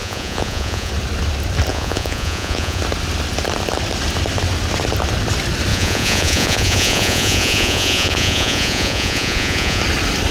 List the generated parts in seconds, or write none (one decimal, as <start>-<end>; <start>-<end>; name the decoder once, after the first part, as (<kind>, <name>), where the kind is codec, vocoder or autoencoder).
0.0-0.9 (vocoder, Vocos); 1.7-2.8; 5.7-9.8